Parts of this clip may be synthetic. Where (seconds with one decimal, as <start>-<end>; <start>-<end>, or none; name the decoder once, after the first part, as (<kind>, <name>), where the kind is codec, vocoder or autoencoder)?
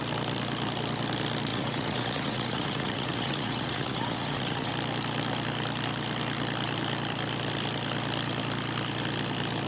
1.5-4.7 (vocoder, Vocos)